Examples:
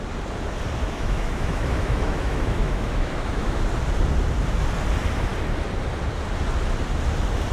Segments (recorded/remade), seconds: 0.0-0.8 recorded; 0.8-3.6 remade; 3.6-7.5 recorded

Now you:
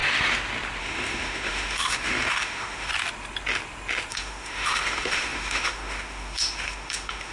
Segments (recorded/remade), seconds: 0.0-0.8 recorded; 0.8-2.9 remade; 2.9-4.1 recorded; 4.1-7.3 remade

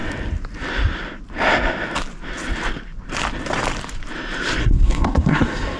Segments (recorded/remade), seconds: 0.0-4.6 recorded; 4.6-5.8 remade